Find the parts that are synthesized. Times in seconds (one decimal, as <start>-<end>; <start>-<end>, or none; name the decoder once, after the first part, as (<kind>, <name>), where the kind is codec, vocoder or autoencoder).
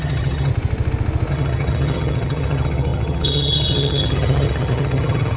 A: 0.0-0.5 (vocoder, HiFi-GAN); 1.3-5.4